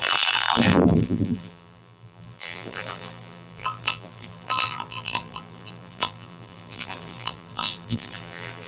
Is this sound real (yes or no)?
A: no